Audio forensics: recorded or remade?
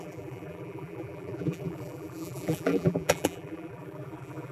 remade